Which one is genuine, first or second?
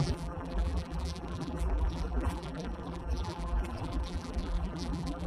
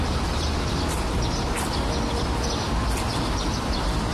second